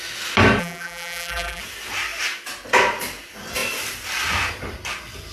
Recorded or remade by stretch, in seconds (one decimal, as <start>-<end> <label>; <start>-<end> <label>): 0.0-0.6 recorded; 0.6-1.6 remade; 1.6-5.3 recorded